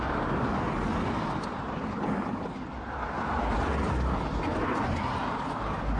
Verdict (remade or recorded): recorded